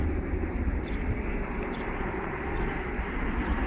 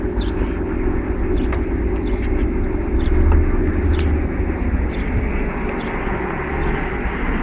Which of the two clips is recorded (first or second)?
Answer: second